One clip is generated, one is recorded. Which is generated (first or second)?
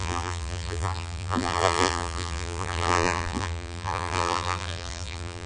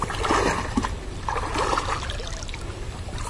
first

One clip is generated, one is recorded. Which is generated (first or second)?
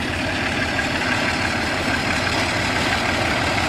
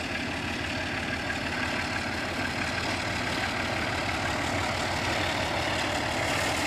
first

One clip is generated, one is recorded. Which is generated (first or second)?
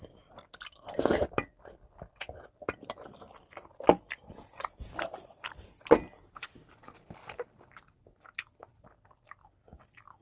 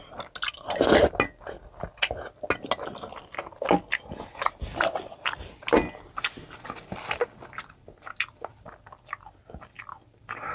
first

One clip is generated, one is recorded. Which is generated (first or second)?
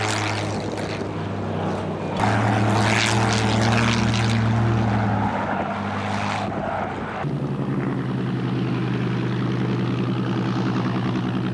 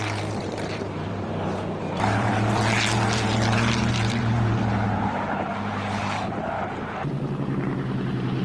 second